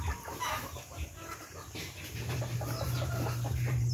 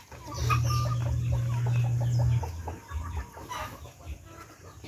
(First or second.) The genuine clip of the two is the second